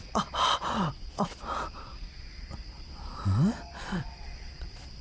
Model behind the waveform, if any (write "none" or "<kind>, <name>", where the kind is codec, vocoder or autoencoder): vocoder, Vocos